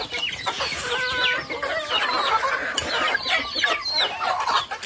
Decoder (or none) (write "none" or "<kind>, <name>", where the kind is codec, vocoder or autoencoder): none